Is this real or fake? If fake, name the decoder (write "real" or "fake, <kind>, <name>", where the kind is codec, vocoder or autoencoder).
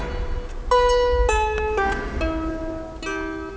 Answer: real